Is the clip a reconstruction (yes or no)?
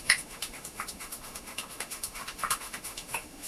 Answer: yes